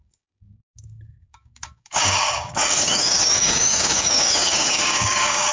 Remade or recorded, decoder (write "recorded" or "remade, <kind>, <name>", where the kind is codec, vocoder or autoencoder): remade, codec, DAC